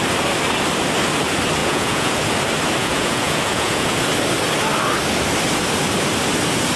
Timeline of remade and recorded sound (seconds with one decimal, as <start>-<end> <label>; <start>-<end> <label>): 0.0-1.6 recorded; 1.6-2.2 remade; 2.2-2.8 recorded; 2.8-4.0 remade; 4.0-6.8 recorded